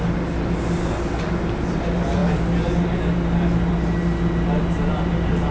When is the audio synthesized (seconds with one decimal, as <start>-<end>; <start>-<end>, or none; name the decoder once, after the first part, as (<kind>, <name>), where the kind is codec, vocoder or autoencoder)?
none